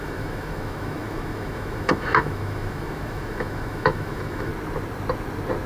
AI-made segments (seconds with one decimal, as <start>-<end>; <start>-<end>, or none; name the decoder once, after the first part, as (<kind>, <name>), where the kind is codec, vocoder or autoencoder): 0.0-4.5 (autoencoder, DAC-VAE)